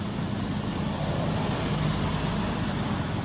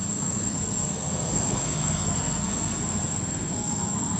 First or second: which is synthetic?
second